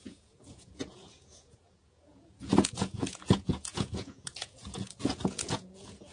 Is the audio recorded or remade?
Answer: remade